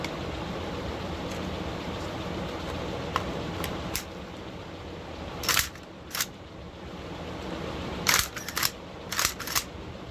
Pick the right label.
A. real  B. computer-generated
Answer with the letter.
B